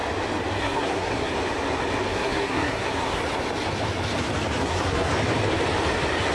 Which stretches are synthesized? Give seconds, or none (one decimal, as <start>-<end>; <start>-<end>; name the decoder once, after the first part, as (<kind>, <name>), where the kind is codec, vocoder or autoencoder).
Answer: 0.6-1.3 (codec, SNAC); 2.1-3.2; 4.6-5.1